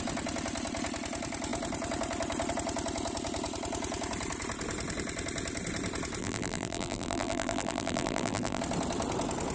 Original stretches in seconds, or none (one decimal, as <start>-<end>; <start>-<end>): 0.0-6.2; 8.6-9.5